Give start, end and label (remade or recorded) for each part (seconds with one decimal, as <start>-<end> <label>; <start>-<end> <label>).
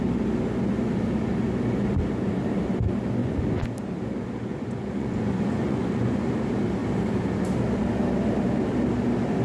0.0-3.2 recorded; 3.2-3.7 remade; 3.7-4.5 recorded; 4.5-6.3 remade; 6.3-9.4 recorded